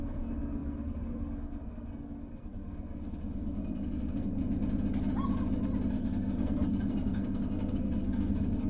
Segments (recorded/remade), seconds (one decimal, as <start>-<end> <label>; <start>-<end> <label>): 0.0-4.4 remade; 4.4-5.9 recorded; 5.9-8.7 remade